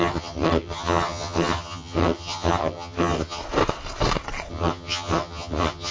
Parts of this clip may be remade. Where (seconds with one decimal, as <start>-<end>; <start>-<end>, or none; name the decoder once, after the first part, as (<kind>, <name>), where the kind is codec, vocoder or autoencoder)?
0.0-3.4 (vocoder, HiFi-GAN); 4.5-5.9